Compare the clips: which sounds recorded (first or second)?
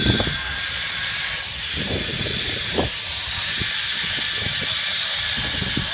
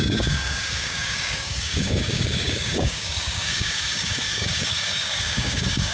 first